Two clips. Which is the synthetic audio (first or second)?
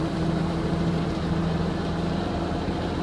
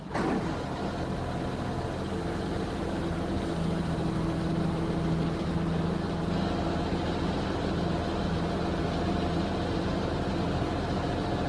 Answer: first